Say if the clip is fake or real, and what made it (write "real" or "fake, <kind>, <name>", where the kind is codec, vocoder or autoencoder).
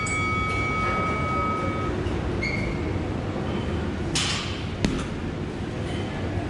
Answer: real